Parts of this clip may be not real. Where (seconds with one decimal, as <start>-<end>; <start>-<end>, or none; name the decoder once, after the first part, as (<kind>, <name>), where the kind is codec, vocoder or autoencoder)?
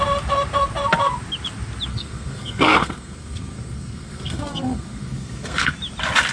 1.9-5.7 (codec, SNAC)